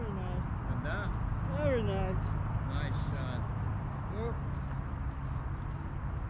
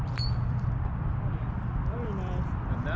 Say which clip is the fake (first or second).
second